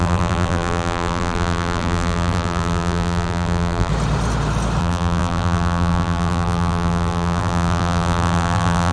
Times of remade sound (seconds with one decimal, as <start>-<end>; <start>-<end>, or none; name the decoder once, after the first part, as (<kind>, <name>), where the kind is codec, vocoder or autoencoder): 0.0-3.9 (vocoder, BigVGAN v2); 4.8-8.9